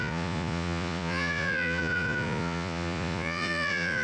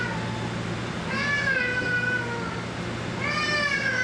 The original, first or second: second